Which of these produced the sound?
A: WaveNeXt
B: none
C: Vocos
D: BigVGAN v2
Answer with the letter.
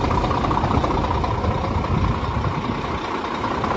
B